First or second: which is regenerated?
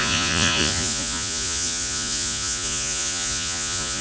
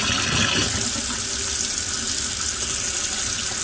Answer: first